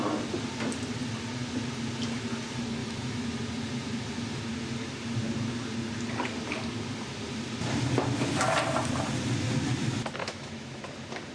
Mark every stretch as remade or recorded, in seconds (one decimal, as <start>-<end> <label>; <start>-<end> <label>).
0.0-2.8 recorded; 2.8-3.4 remade; 3.4-10.2 recorded; 10.2-10.8 remade; 10.8-11.3 recorded